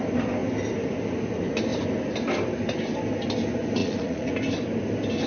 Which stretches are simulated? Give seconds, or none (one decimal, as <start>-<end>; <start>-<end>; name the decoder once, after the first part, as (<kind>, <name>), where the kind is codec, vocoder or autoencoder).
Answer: 3.8-4.3 (vocoder, Vocos)